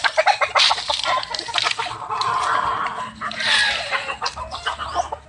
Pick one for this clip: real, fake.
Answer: real